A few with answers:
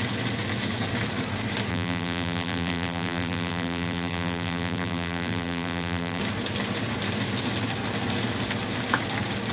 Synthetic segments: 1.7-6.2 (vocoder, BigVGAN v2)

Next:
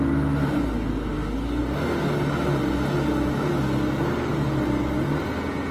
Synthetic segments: none

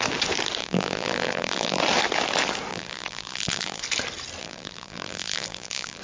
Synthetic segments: 0.6-1.8 (vocoder, BigVGAN v2); 2.7-3.8; 4.4-6.0

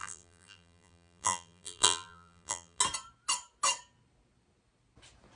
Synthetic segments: 0.0-2.8 (vocoder, BigVGAN v2)

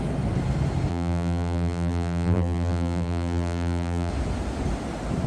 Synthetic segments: 0.9-4.1 (vocoder, BigVGAN v2)

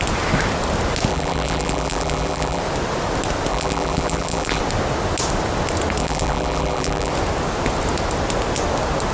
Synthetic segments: 1.1-2.6 (vocoder, BigVGAN v2); 3.5-4.6; 6.0-7.1

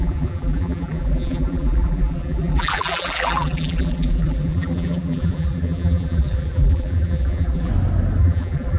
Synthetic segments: 0.0-7.7 (vocoder, BigVGAN v2); 8.2-8.8

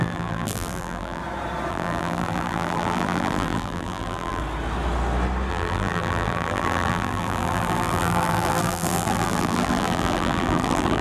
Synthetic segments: 0.0-1.2 (vocoder, BigVGAN v2); 1.7-4.4; 5.5-11.0